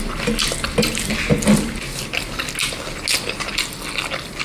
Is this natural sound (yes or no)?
yes